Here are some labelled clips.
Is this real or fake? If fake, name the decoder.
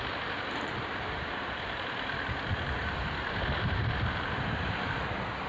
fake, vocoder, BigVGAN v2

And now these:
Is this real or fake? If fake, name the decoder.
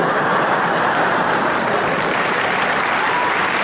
fake, vocoder, BigVGAN v2